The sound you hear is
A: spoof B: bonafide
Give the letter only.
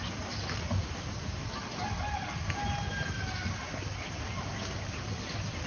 B